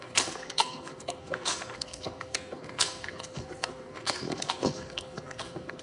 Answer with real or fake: fake